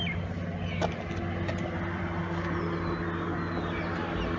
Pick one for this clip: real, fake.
real